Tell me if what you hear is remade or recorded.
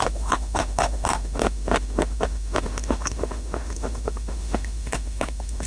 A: remade